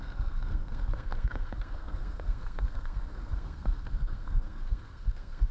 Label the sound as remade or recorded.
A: remade